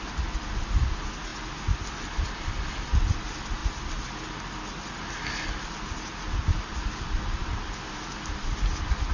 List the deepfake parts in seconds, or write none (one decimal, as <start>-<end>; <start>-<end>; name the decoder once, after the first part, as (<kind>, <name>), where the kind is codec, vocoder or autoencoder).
none